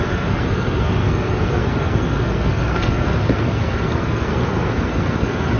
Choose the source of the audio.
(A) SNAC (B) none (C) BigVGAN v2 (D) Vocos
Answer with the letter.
A